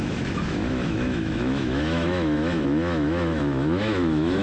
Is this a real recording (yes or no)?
no